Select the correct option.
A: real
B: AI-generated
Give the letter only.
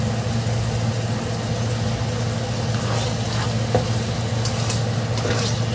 A